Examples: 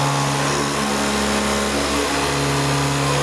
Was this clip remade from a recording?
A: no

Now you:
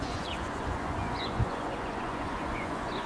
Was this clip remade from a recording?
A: yes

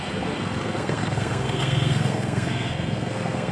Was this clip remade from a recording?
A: yes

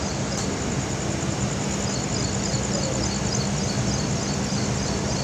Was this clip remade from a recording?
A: no